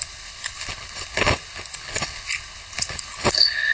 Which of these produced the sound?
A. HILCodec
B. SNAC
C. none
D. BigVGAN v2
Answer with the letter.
A